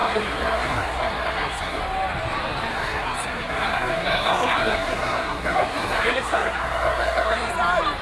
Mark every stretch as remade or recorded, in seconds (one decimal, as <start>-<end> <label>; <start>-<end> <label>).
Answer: 0.0-1.8 remade; 1.8-2.7 recorded; 2.7-7.5 remade; 7.5-8.0 recorded